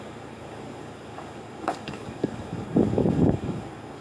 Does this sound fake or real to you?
fake